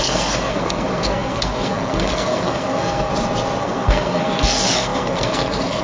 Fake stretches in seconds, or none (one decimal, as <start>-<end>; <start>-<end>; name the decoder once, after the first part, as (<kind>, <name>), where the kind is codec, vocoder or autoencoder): 0.0-3.1 (codec, SNAC); 3.6-5.8